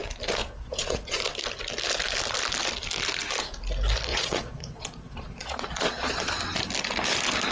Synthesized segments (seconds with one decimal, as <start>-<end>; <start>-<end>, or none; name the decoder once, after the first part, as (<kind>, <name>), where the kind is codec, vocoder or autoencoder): 0.4-1.2 (vocoder, Vocos); 4.1-6.3